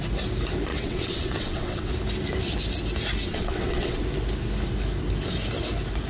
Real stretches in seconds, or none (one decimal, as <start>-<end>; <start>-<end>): 0.0-0.7; 1.9-3.3; 4.0-6.1